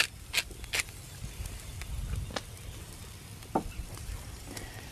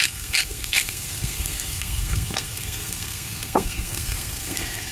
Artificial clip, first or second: second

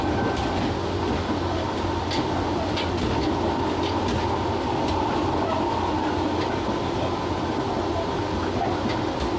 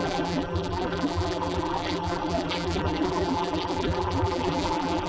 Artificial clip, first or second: second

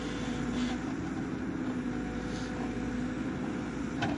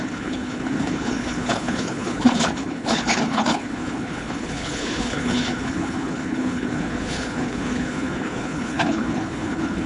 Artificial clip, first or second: second